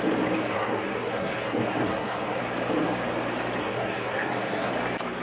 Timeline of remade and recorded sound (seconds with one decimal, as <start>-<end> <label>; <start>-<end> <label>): 0.0-0.4 recorded; 0.4-2.4 remade; 2.4-3.6 recorded; 3.6-4.7 remade; 4.7-5.2 recorded